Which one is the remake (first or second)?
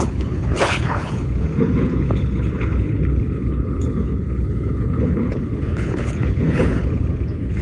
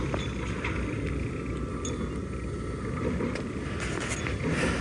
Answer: first